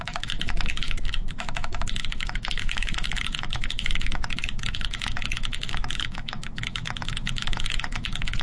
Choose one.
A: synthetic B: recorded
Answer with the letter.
A